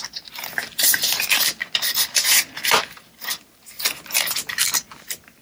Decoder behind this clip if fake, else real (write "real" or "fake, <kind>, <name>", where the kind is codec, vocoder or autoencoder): real